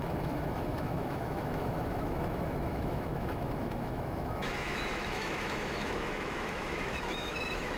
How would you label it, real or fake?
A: fake